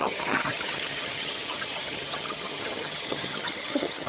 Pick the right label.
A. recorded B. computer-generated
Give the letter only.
B